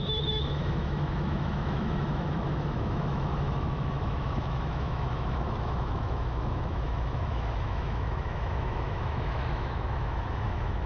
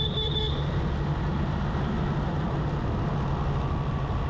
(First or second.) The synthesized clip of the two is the first